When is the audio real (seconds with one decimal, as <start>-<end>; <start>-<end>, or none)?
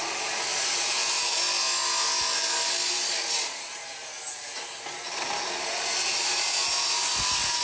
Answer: 0.0-7.6